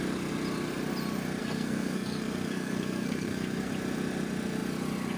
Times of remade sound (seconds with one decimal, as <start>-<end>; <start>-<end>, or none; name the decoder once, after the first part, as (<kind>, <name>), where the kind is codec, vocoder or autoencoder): 1.4-3.7 (codec, SNAC)